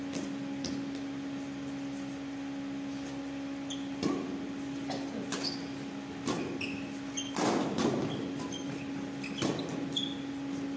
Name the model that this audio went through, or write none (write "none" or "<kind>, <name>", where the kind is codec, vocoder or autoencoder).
none